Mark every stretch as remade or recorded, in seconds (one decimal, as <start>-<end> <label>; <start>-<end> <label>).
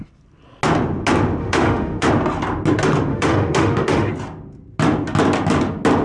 0.0-1.4 recorded; 1.4-2.1 remade; 2.1-3.1 recorded; 3.1-4.1 remade; 4.1-6.0 recorded